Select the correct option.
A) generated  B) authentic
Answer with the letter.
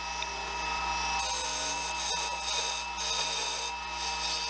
B